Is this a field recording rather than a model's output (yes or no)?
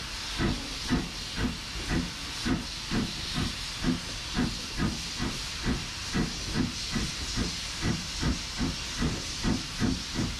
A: yes